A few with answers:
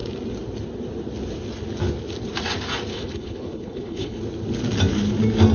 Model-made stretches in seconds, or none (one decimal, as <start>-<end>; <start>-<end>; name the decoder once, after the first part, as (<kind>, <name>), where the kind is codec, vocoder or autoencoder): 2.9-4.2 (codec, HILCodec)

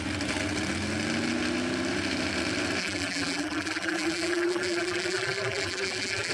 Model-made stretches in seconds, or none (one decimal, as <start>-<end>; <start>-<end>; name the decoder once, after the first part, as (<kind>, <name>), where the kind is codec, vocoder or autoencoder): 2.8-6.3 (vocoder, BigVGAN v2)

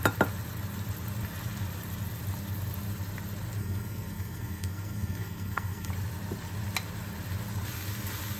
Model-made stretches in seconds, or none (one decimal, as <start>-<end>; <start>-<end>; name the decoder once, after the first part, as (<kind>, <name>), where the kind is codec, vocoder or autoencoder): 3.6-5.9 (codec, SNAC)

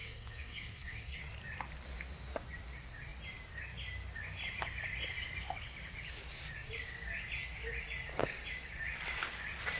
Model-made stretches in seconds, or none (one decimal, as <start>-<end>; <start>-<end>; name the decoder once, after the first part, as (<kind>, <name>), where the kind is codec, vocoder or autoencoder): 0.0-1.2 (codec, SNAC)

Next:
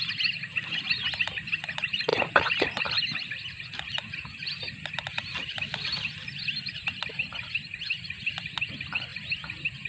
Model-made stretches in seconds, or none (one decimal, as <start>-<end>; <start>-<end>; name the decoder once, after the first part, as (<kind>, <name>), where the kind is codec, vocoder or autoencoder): none

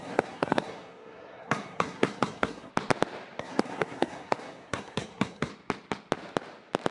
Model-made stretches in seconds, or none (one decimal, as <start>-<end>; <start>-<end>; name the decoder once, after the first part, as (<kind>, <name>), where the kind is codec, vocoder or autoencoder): 0.0-2.7 (codec, SNAC); 3.4-5.5

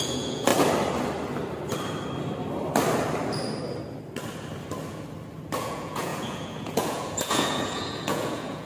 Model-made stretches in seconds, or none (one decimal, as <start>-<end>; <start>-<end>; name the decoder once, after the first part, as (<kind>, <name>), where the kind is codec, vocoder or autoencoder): 0.0-0.5 (vocoder, Vocos); 5.6-8.6